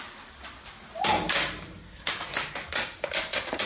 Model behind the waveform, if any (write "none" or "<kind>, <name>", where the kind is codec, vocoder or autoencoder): none